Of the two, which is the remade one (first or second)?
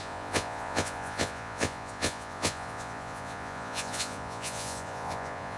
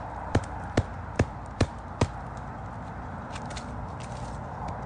first